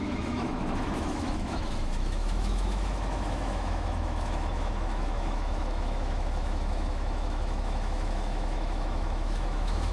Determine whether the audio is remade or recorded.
remade